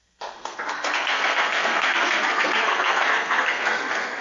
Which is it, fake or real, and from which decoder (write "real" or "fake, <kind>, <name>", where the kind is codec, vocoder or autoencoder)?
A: fake, codec, SNAC